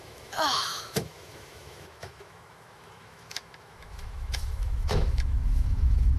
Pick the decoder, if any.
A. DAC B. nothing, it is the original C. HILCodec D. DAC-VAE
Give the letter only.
D